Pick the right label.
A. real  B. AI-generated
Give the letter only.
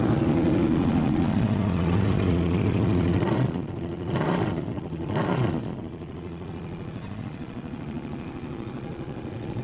B